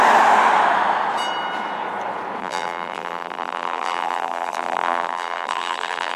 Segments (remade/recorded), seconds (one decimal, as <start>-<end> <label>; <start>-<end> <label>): 0.0-2.4 recorded; 2.4-6.2 remade